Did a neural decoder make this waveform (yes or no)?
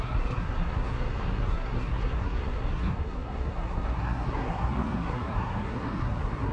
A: yes